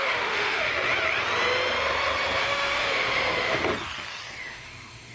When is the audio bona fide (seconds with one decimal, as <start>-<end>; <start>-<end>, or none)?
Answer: 0.7-2.4; 3.6-4.4